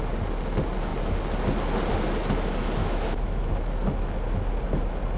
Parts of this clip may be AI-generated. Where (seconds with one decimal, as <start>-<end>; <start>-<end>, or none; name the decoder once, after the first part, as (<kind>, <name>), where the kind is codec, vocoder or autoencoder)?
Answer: 2.8-3.5 (autoencoder, DAC-VAE)